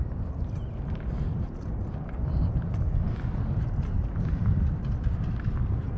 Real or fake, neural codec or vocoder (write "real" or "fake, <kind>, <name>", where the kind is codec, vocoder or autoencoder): real